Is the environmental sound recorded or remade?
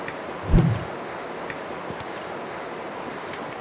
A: recorded